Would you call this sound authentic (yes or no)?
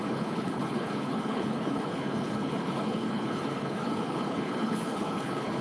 no